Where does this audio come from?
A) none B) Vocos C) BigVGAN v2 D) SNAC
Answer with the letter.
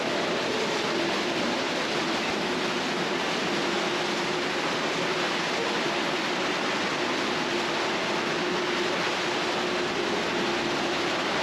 A